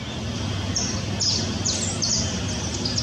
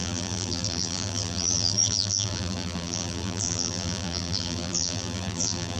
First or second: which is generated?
second